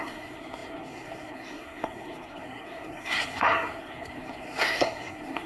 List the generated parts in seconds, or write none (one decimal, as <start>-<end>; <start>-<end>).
0.0-5.5